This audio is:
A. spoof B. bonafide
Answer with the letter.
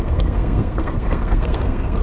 A